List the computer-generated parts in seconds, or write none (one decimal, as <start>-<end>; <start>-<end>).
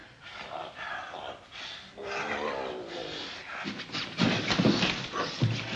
none